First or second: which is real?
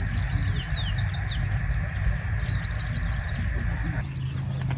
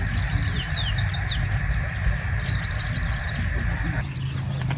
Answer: first